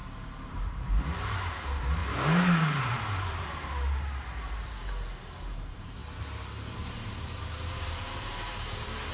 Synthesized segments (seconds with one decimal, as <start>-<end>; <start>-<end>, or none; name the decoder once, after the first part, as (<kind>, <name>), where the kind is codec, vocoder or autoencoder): 0.5-2.0 (vocoder, BigVGAN v2); 2.8-9.1